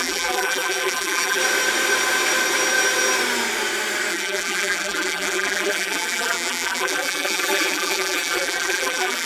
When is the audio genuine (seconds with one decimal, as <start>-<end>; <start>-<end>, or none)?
1.4-4.1